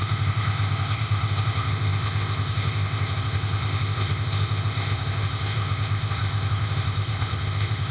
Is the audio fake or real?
fake